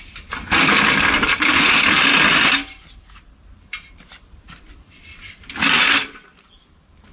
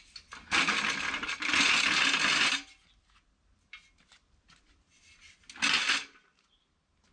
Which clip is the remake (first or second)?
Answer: first